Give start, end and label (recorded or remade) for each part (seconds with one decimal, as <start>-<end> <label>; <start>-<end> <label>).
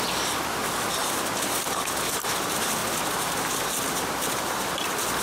0.0-0.6 remade; 0.6-2.0 recorded; 2.0-2.8 remade; 2.8-3.5 recorded; 3.5-5.2 remade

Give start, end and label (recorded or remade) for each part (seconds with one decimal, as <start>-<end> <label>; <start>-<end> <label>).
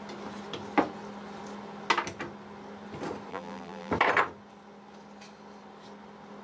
0.0-3.3 recorded; 3.3-3.9 remade; 3.9-6.4 recorded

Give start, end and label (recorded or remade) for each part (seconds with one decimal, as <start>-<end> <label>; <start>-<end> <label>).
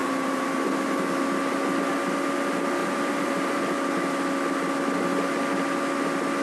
0.0-0.6 remade; 0.6-2.8 recorded; 2.8-3.6 remade; 3.6-6.4 recorded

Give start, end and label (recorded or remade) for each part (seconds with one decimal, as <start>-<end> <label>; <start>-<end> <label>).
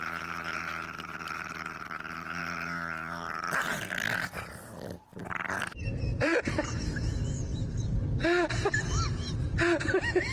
0.0-2.4 recorded; 2.4-3.9 remade; 3.9-5.2 recorded; 5.2-6.5 remade; 6.5-10.3 recorded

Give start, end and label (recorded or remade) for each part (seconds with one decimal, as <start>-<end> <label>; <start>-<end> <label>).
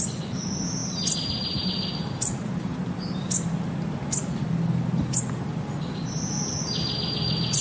0.0-7.6 recorded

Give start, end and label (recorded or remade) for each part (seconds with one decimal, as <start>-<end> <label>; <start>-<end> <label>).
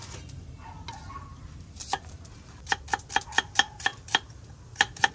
0.0-1.8 recorded; 1.8-2.8 remade; 2.8-3.9 recorded; 3.9-5.1 remade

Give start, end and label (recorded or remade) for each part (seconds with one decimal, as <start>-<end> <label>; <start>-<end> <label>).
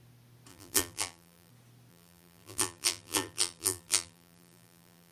0.0-0.5 recorded; 0.5-1.5 remade; 1.5-1.9 recorded; 1.9-5.1 remade